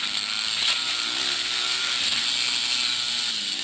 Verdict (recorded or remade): recorded